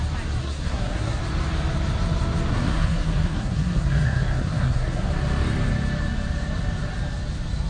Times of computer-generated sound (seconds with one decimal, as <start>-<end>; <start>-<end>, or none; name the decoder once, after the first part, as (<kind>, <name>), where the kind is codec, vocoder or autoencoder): 0.4-1.2 (codec, SNAC); 2.5-5.1